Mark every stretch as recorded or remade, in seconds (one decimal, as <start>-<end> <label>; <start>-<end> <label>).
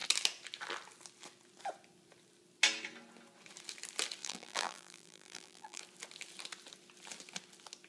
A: 0.0-4.2 recorded; 4.2-5.8 remade; 5.8-7.9 recorded